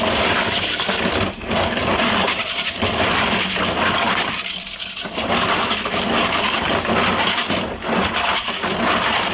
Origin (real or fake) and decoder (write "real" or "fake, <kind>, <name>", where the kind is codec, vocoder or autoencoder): real